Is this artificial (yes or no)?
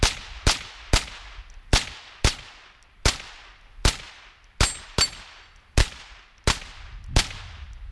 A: no